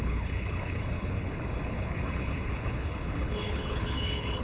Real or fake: fake